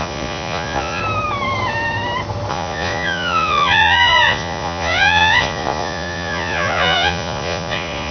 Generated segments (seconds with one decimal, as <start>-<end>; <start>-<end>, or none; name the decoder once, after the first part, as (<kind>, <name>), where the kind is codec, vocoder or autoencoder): 0.0-1.0 (vocoder, Vocos); 2.5-8.1